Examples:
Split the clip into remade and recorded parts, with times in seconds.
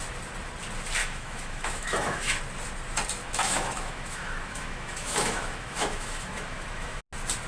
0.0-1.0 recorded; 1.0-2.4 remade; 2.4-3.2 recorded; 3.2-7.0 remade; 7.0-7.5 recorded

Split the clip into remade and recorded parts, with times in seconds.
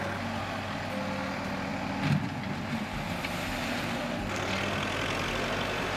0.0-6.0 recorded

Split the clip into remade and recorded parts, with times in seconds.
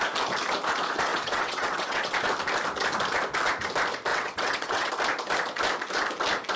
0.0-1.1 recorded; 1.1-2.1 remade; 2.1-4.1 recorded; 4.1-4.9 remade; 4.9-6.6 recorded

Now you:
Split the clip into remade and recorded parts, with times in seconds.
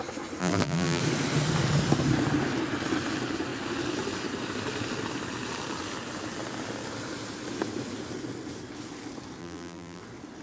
0.0-0.4 recorded; 0.4-1.0 remade; 1.0-9.4 recorded; 9.4-10.0 remade; 10.0-10.4 recorded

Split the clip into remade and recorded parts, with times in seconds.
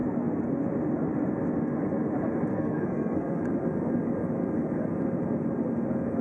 0.0-2.5 recorded; 2.5-3.4 remade; 3.4-6.2 recorded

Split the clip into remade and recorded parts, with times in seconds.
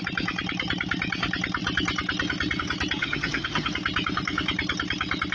0.0-3.0 recorded; 3.0-3.7 remade; 3.7-5.3 recorded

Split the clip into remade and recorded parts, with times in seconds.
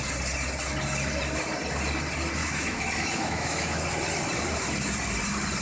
0.0-2.4 recorded; 2.4-3.8 remade; 3.8-5.6 recorded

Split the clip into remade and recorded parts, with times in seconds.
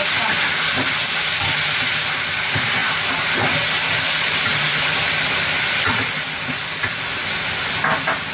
0.0-8.3 recorded